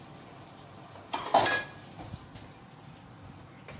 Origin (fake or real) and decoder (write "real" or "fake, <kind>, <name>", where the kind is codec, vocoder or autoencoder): real